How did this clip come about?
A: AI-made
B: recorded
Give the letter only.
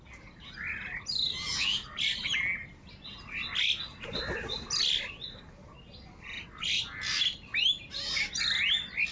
B